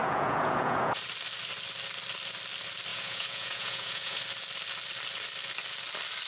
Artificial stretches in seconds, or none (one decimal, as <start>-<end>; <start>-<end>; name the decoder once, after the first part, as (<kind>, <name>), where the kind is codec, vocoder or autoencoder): 0.0-1.0 (vocoder, Vocos); 2.9-4.2